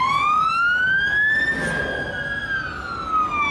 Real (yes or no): yes